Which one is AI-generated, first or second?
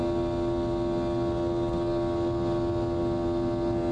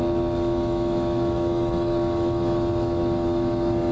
second